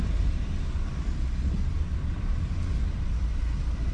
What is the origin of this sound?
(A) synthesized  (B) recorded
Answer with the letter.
B